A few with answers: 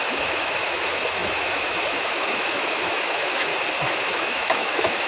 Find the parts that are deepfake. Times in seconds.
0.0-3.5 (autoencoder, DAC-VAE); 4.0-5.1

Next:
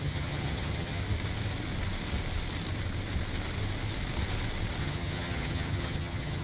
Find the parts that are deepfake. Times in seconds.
0.0-1.0 (vocoder, HiFi-GAN); 4.8-6.4